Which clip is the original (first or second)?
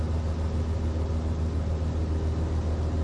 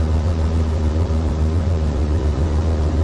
first